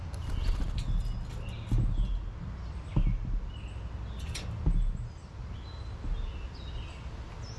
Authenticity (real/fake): real